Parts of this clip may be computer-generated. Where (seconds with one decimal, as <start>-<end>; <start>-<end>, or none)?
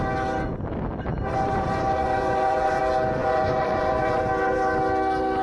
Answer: 1.1-2.8; 3.2-4.2